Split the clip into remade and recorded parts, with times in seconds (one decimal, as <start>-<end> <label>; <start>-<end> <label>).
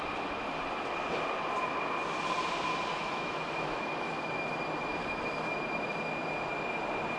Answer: 0.0-2.9 recorded; 2.9-4.5 remade; 4.5-4.9 recorded; 4.9-5.5 remade; 5.5-7.2 recorded